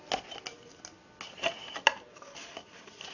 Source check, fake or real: real